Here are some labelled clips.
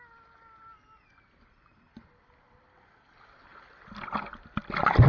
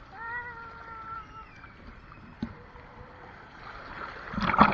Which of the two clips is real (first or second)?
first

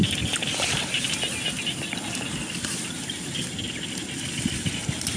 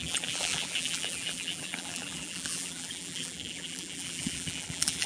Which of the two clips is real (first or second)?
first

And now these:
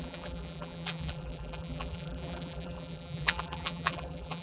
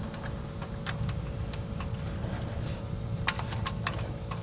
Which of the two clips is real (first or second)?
second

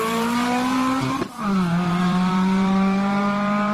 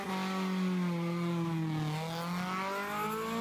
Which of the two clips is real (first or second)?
second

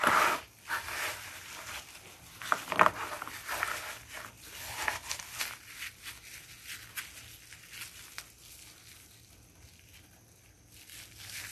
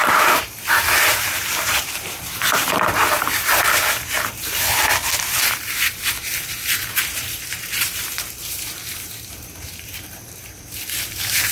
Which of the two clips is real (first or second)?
first